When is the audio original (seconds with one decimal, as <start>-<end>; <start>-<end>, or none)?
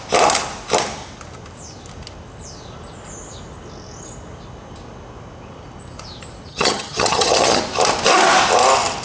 0.0-6.5; 7.6-9.0